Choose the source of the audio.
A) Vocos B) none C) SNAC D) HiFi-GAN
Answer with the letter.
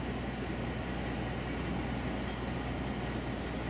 B